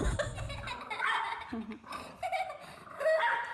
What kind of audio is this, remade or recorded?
recorded